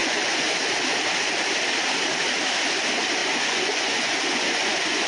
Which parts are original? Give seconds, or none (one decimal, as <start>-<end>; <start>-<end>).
0.6-3.2